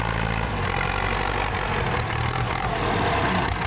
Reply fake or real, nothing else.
real